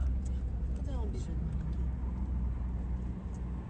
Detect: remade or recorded recorded